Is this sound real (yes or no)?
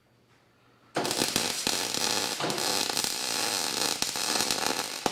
yes